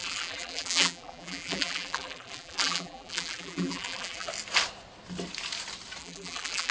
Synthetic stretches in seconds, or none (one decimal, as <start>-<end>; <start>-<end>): 0.0-4.3; 6.0-6.7